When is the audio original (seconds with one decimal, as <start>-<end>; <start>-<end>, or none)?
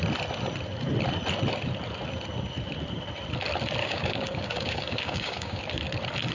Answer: 0.0-3.8; 5.6-6.3